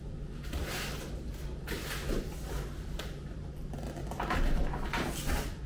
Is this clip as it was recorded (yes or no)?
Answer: yes